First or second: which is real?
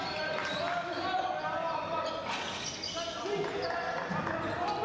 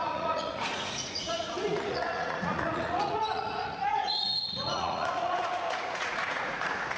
first